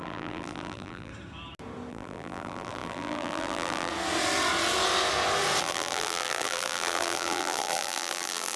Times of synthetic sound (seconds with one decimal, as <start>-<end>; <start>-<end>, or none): 0.0-1.1; 1.9-3.9; 5.6-8.6